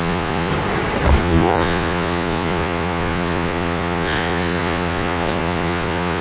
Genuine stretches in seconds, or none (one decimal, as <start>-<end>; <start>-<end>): 0.5-1.2